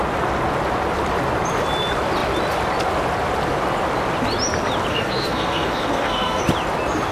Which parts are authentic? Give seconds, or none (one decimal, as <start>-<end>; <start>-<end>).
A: 0.0-4.9; 6.4-7.1